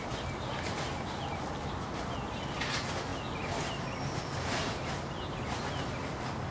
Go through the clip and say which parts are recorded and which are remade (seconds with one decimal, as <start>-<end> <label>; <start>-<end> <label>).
0.0-6.5 recorded